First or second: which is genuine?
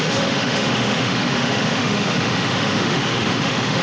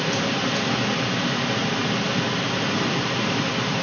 second